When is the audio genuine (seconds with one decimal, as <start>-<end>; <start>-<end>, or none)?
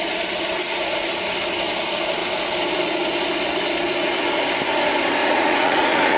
0.0-0.6; 1.1-5.2